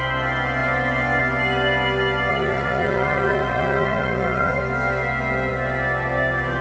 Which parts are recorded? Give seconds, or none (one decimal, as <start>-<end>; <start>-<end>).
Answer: 0.0-2.3; 4.6-6.6